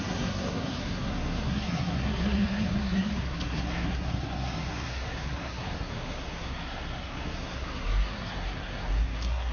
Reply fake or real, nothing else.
fake